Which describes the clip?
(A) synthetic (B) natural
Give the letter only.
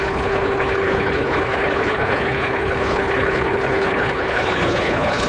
A